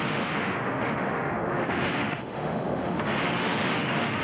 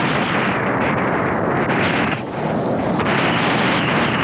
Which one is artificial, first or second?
first